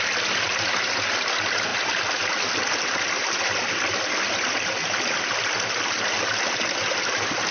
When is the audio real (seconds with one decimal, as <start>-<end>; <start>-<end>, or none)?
0.0-7.5

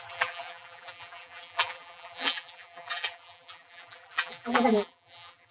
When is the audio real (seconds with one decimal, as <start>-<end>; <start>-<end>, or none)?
none

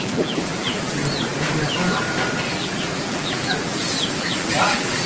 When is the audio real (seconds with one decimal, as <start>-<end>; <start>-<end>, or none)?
1.0-2.5; 3.7-4.2

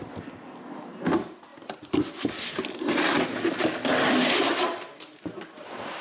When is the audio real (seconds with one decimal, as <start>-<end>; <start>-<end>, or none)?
0.0-6.0